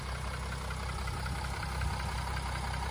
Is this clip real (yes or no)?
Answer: yes